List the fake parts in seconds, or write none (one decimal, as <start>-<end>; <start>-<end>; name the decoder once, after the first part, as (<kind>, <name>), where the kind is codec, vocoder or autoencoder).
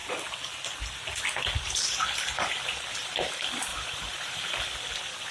3.7-4.6 (vocoder, BigVGAN v2)